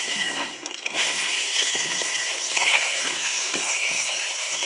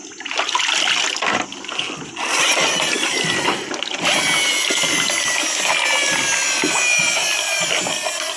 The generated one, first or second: first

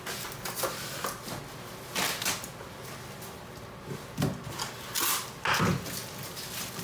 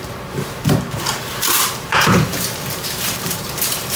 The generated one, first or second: second